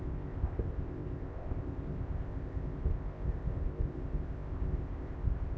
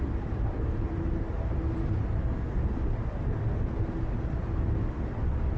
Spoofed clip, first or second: first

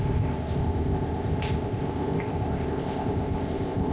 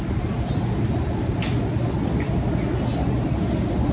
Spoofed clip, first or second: first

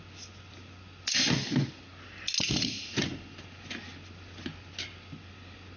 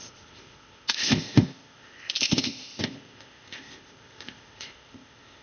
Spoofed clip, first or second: second